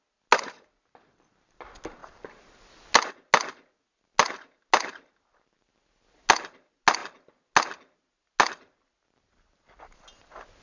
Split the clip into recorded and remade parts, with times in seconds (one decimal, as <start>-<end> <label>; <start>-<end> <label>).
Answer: 0.0-10.6 recorded